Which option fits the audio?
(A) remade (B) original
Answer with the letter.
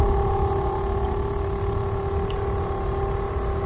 B